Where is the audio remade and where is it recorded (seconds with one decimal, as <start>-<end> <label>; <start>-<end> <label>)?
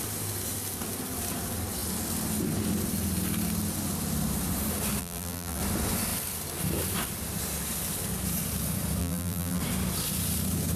0.0-5.0 recorded; 5.0-5.6 remade; 5.6-9.0 recorded; 9.0-9.6 remade; 9.6-10.8 recorded